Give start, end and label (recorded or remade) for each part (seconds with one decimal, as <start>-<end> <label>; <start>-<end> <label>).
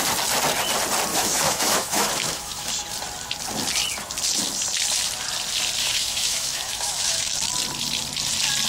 0.0-1.1 recorded; 1.1-2.7 remade; 2.7-5.8 recorded; 5.8-7.3 remade; 7.3-8.7 recorded